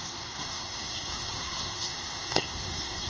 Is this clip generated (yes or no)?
yes